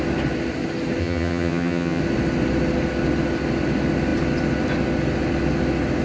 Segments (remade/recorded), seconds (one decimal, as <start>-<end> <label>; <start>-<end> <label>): 0.0-1.0 recorded; 1.0-2.0 remade; 2.0-6.0 recorded